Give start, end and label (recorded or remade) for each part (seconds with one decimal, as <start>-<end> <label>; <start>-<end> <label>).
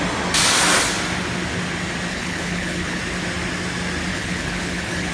0.0-2.1 recorded; 2.1-3.0 remade; 3.0-4.1 recorded; 4.1-5.1 remade